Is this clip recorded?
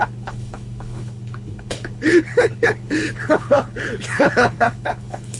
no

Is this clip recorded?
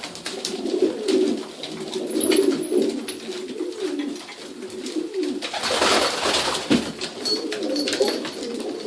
yes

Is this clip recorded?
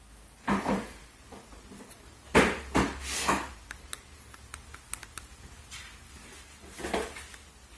yes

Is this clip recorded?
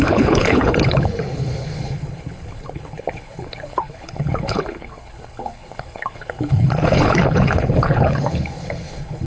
no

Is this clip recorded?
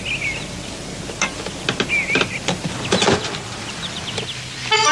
yes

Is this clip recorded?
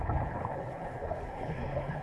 no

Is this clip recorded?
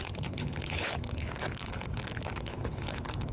no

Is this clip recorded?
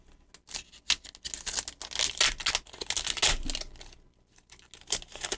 yes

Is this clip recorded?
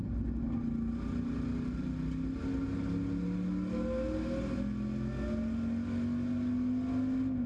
yes